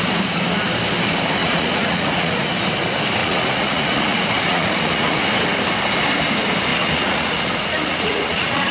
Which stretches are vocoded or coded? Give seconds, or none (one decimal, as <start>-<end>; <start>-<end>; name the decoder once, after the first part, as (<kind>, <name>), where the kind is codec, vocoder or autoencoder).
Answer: 1.4-2.5 (vocoder, Vocos); 3.2-5.2; 6.7-8.7